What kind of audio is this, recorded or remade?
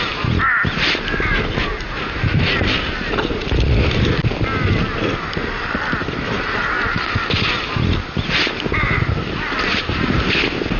recorded